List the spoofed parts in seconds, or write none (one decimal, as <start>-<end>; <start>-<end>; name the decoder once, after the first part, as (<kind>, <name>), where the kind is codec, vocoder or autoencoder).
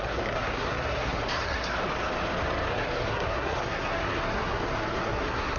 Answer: 0.0-1.8 (codec, SNAC); 2.7-5.6